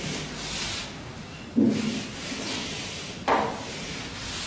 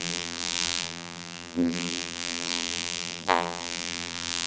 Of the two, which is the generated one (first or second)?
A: second